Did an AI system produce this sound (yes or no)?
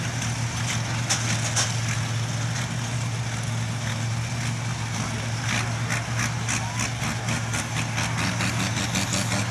no